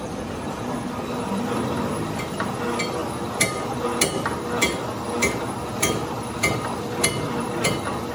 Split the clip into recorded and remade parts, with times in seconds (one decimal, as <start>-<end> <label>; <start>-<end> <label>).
0.0-8.1 recorded